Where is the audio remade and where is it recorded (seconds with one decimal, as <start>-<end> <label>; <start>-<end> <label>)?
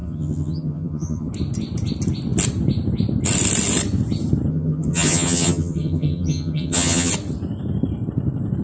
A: 0.0-1.3 remade; 1.3-4.5 recorded; 4.5-7.1 remade; 7.1-8.6 recorded